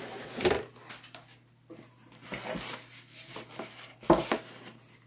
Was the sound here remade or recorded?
recorded